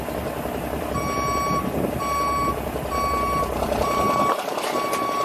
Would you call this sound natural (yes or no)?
yes